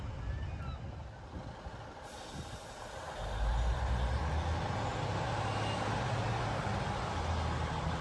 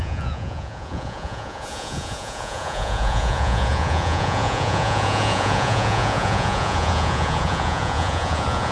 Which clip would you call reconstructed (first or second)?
second